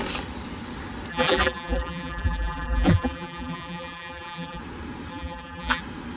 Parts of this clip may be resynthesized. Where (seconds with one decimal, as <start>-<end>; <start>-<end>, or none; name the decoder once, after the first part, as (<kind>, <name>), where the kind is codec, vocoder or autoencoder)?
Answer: 1.1-4.6 (vocoder, BigVGAN v2); 5.1-5.8